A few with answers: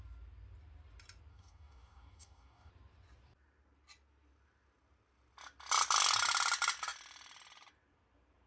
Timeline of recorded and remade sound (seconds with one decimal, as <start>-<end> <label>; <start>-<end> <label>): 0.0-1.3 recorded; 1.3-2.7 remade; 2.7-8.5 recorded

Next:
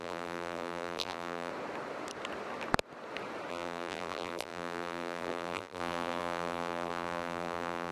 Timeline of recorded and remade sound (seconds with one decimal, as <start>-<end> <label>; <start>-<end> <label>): 0.0-1.5 remade; 1.5-3.5 recorded; 3.5-7.9 remade

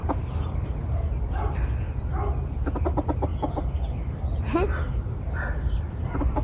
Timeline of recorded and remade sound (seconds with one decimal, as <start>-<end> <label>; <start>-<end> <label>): 0.0-6.4 recorded

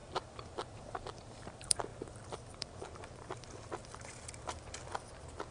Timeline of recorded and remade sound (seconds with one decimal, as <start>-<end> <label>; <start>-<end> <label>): 0.0-5.5 remade

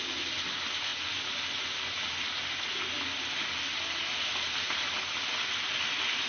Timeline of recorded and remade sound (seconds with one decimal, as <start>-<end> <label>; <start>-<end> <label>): 0.0-6.3 recorded

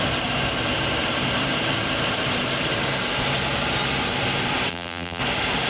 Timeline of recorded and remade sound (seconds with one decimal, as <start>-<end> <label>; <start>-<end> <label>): 0.0-4.7 recorded; 4.7-5.2 remade; 5.2-5.7 recorded

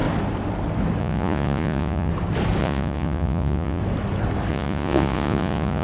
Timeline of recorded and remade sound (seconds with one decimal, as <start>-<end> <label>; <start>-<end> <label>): 0.0-1.0 recorded; 1.0-2.1 remade; 2.1-2.6 recorded; 2.6-3.8 remade; 3.8-4.5 recorded; 4.5-5.8 remade

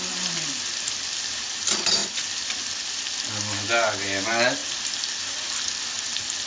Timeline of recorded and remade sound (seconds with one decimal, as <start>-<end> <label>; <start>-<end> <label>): 0.0-6.5 recorded